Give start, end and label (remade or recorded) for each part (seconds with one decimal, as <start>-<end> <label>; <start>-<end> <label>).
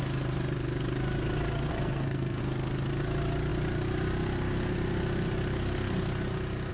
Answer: 0.0-1.7 recorded; 1.7-2.4 remade; 2.4-6.7 recorded